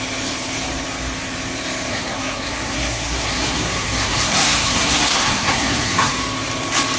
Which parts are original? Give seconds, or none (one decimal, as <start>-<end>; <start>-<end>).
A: 0.0-1.9; 6.1-7.0